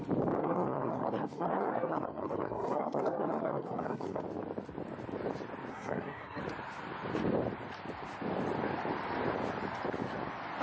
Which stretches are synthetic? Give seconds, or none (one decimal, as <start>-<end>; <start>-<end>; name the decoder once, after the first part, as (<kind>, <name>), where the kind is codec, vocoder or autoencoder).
0.4-4.2 (codec, SNAC); 5.7-6.4